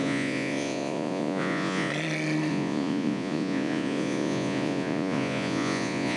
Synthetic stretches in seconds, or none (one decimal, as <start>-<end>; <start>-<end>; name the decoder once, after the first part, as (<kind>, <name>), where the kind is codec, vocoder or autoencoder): 0.0-1.9 (vocoder, Vocos); 2.5-6.2